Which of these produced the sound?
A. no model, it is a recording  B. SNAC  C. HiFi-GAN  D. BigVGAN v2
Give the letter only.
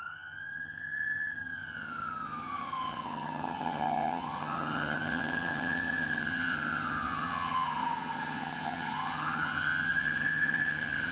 C